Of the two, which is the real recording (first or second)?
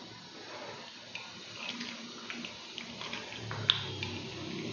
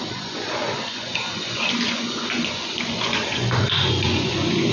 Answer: first